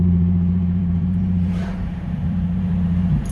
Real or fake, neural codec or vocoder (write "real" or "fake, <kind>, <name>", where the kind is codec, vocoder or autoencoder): fake, vocoder, BigVGAN v2